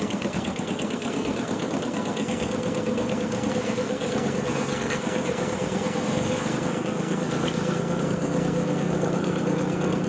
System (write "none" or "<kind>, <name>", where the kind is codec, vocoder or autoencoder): codec, SNAC